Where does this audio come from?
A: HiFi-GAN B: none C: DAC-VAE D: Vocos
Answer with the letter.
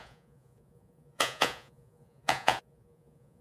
D